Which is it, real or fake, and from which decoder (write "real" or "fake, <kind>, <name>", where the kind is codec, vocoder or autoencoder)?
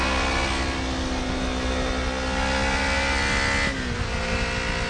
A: real